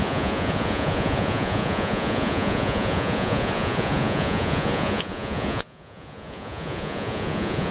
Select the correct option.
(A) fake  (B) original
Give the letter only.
A